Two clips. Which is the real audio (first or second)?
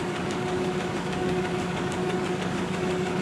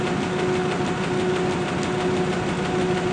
second